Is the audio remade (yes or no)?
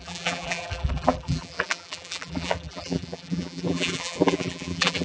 yes